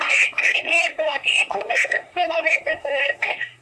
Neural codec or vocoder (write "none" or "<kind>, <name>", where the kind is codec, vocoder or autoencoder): codec, SNAC